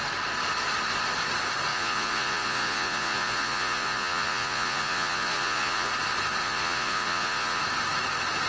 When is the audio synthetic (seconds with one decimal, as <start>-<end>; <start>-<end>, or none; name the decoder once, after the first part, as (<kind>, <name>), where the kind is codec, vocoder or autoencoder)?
1.7-5.9 (vocoder, Vocos); 6.4-7.6